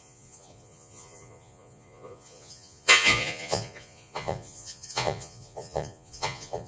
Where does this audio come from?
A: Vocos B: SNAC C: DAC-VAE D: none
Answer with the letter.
A